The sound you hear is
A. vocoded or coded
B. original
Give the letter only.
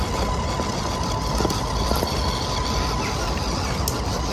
B